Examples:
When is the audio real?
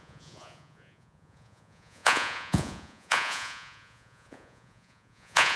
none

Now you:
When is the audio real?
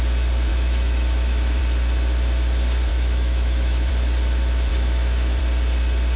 0.0-0.5; 1.6-2.9; 3.9-4.7; 5.4-6.2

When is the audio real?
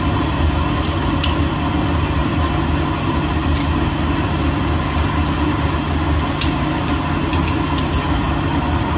0.0-2.2; 2.7-9.0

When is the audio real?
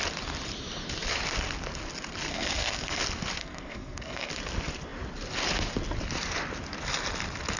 0.0-2.3; 3.0-3.4; 4.3-7.6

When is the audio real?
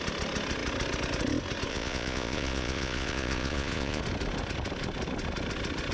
0.0-1.7; 4.0-5.9